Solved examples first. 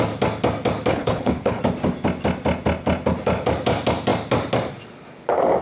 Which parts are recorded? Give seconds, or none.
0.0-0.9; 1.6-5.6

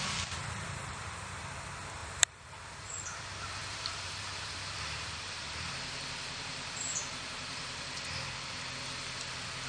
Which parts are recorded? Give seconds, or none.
0.0-0.4; 0.9-2.0; 3.2-3.6; 8.0-9.7

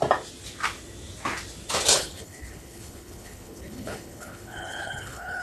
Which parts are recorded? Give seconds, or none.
0.0-1.9

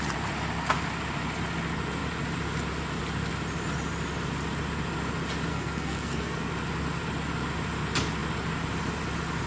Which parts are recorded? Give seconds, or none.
0.0-5.5; 6.5-9.5

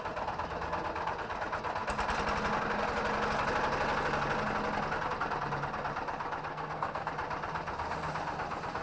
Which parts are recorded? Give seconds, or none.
0.0-6.5; 7.1-8.8